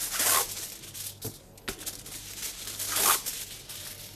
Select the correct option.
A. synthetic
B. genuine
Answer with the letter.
B